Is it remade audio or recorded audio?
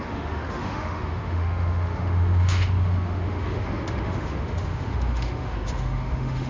remade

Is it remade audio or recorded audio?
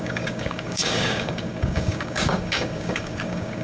remade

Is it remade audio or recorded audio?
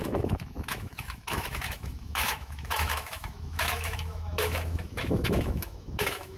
remade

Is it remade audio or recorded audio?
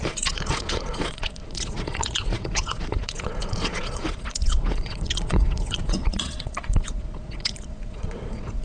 remade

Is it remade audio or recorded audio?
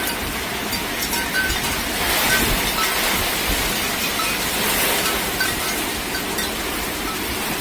recorded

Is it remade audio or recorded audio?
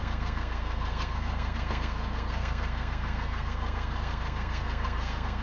remade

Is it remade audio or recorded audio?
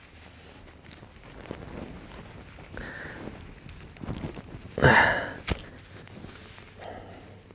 recorded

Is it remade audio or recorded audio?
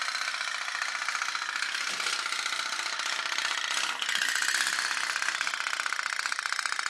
recorded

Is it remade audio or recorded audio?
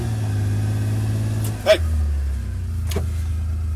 recorded